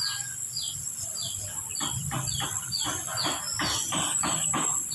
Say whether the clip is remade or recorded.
recorded